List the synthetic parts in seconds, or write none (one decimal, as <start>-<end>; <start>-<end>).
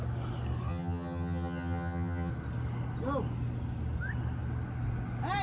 0.7-2.3